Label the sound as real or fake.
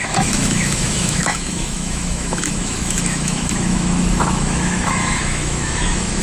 fake